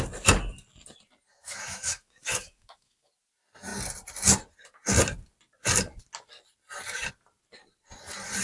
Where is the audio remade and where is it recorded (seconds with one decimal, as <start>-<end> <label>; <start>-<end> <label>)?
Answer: 0.0-1.3 recorded; 1.3-3.1 remade; 3.1-8.4 recorded